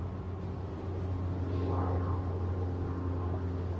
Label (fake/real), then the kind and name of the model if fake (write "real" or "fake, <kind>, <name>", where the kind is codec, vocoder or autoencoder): real